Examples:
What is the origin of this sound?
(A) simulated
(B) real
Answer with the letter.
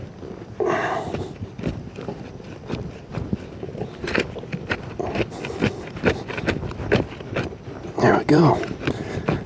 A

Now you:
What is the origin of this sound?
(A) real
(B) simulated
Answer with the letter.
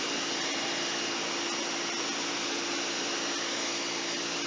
A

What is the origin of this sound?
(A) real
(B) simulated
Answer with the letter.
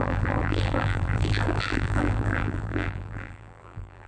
B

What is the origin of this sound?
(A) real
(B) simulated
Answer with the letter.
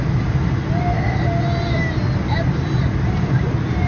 A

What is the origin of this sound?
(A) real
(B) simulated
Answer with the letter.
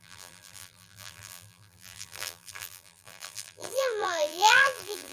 B